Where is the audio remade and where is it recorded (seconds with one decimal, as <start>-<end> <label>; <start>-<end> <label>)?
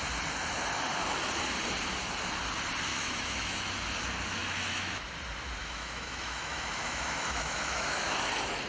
0.0-2.9 recorded; 2.9-3.7 remade; 3.7-4.4 recorded; 4.4-5.1 remade; 5.1-5.6 recorded; 5.6-8.1 remade; 8.1-8.7 recorded